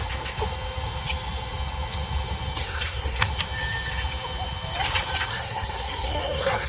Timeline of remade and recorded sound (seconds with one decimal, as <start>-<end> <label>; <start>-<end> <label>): 0.0-2.6 recorded; 2.6-3.3 remade; 3.3-5.3 recorded; 5.3-6.7 remade